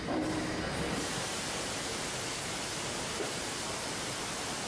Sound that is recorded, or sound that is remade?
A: recorded